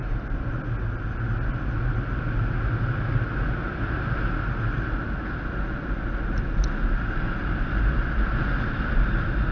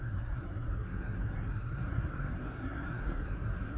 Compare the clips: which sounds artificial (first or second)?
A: second